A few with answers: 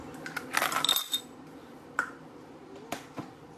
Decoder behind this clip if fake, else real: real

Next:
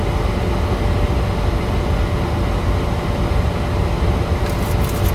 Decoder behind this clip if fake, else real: real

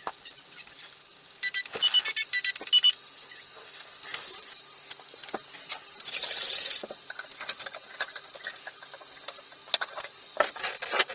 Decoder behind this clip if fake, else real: real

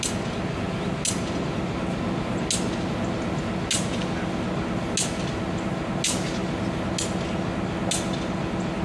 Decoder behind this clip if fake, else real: real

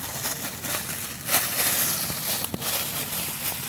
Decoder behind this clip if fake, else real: real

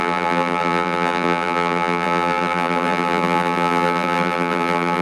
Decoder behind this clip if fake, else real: fake, vocoder, BigVGAN v2